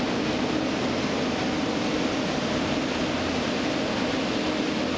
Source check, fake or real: real